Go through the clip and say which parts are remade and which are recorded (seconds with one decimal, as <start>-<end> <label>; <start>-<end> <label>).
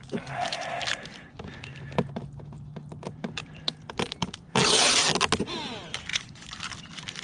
0.0-6.1 recorded; 6.1-6.6 remade; 6.6-7.2 recorded